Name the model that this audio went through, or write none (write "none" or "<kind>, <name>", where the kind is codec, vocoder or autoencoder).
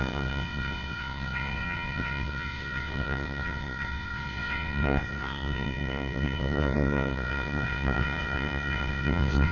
vocoder, WaveNeXt